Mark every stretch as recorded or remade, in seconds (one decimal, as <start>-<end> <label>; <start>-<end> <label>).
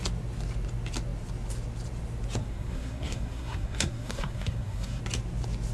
0.0-2.4 recorded; 2.4-5.0 remade; 5.0-5.7 recorded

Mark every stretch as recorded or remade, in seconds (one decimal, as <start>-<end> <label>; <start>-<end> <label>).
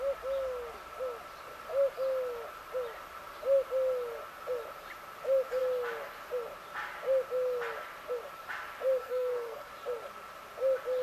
0.0-9.0 recorded; 9.0-9.7 remade; 9.7-11.0 recorded